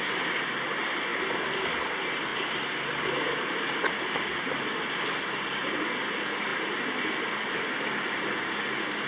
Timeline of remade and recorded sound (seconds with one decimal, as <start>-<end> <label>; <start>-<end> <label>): 0.0-9.1 recorded